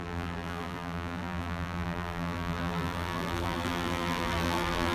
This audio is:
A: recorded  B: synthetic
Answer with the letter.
B